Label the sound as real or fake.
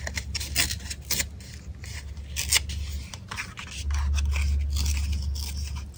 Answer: real